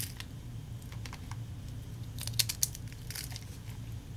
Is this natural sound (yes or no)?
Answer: yes